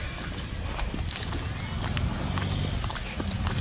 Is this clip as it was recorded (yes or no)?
yes